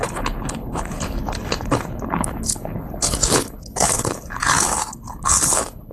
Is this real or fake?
fake